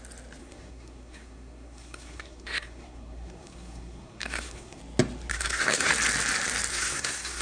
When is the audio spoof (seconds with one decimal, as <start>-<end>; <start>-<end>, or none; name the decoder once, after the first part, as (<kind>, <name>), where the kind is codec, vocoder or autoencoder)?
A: 0.4-4.8 (codec, SNAC); 5.3-5.9; 6.7-7.4